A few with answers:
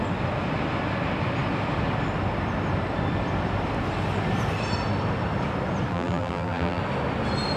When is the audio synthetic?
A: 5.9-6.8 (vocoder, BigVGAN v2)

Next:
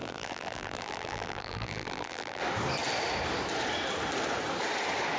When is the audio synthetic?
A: 0.0-2.4 (vocoder, BigVGAN v2)

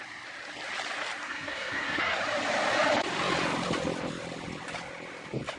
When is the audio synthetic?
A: 1.2-2.2 (codec, SNAC)

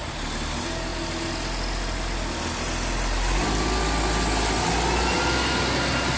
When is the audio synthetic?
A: none

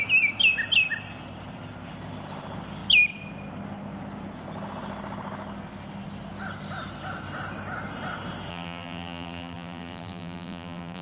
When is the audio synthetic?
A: 8.5-11.0 (vocoder, BigVGAN v2)